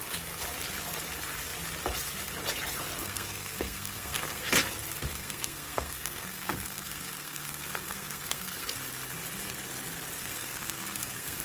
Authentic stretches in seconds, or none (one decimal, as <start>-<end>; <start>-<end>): 0.0-3.0; 4.5-5.0; 8.7-10.2